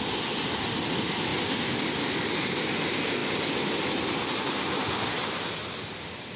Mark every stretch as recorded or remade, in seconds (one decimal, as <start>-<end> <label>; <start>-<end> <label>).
0.0-6.4 recorded